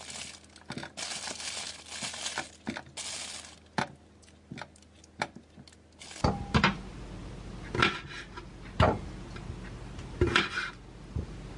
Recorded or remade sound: recorded